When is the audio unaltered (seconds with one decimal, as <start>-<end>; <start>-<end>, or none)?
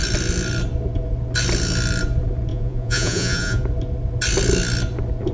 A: 0.0-2.5; 3.6-5.3